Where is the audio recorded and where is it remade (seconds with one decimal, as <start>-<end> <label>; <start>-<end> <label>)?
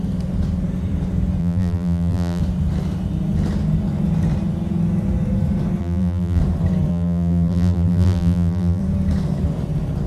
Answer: 0.0-1.4 recorded; 1.4-2.4 remade; 2.4-5.8 recorded; 5.8-6.4 remade; 6.4-6.9 recorded; 6.9-8.8 remade; 8.8-10.1 recorded